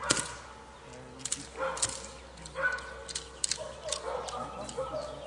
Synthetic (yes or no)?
no